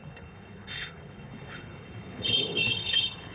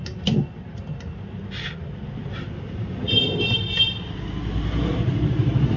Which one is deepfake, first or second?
first